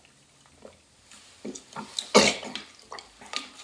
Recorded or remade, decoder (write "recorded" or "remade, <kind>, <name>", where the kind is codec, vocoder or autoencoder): recorded